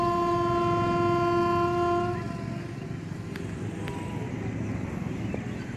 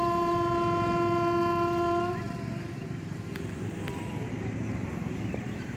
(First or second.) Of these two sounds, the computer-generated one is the second